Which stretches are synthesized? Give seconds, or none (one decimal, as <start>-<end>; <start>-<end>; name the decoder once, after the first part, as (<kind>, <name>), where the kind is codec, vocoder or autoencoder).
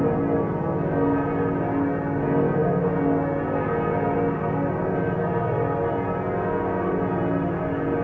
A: none